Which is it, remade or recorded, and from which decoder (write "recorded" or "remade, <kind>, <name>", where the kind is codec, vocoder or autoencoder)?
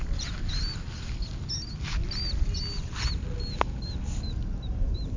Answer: recorded